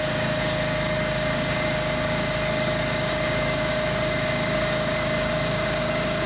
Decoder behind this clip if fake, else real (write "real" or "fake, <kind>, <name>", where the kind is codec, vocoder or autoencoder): fake, codec, DAC